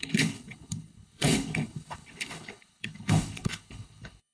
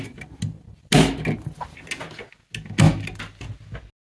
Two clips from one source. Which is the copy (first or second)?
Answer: first